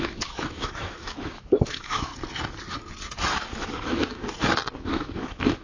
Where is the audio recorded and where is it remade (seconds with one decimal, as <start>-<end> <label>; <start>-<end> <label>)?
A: 0.0-2.1 remade; 2.1-3.6 recorded; 3.6-4.2 remade; 4.2-4.8 recorded; 4.8-5.6 remade